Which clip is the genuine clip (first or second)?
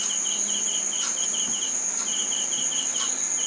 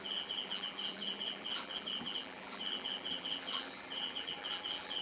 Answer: first